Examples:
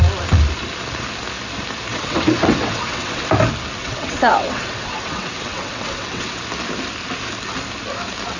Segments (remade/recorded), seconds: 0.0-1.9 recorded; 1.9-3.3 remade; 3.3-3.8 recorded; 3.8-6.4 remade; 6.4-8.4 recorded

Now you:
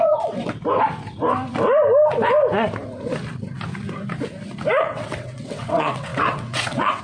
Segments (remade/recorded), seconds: 0.0-0.6 remade; 0.6-4.8 recorded; 4.8-7.0 remade